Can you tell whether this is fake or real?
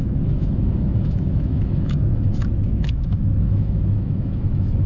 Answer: fake